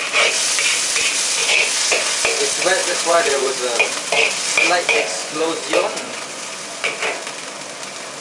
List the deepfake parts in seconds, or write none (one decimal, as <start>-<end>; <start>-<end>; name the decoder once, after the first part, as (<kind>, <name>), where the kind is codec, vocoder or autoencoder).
1.4-2.2 (vocoder, Vocos); 2.8-3.5; 5.2-6.9